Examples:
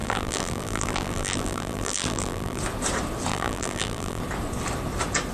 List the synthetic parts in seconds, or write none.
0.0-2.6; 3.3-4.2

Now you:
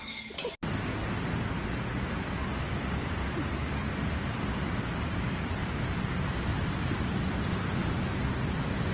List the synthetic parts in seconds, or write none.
2.4-5.6

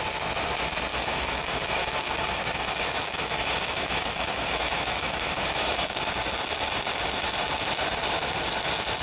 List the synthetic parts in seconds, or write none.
0.9-6.1

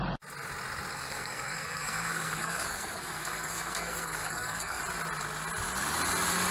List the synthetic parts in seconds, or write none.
0.9-4.8

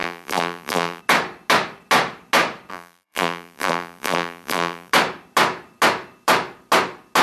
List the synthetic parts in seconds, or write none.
0.0-1.0; 2.7-4.9

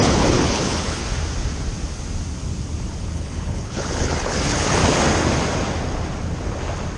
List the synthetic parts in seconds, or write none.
0.0-1.0; 3.0-4.8

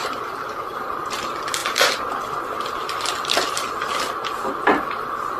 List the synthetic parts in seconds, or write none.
0.0-1.2